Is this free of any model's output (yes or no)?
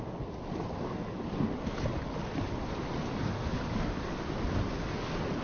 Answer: yes